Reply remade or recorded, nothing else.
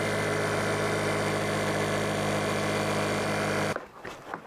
recorded